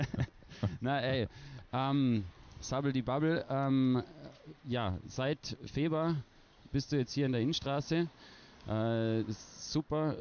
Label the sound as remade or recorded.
recorded